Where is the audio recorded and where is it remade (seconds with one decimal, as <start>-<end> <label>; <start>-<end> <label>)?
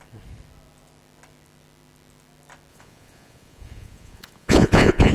0.0-2.7 recorded; 2.7-5.1 remade